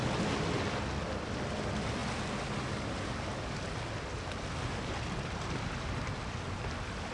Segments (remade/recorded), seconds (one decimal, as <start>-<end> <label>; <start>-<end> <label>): 0.0-7.1 recorded